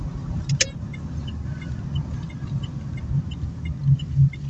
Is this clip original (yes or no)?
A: yes